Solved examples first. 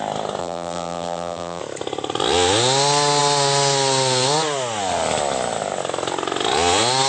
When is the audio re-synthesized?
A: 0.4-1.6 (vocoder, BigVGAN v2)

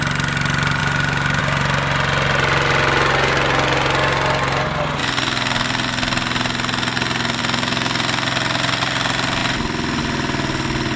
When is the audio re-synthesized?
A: none

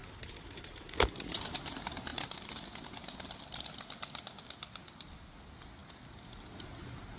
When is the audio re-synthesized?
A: none